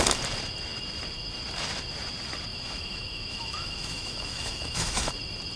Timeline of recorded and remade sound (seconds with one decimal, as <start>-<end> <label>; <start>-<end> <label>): 0.0-2.5 recorded; 2.5-5.1 remade; 5.1-5.6 recorded